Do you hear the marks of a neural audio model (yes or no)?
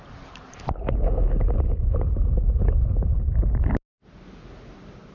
no